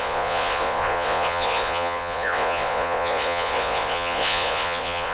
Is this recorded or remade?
remade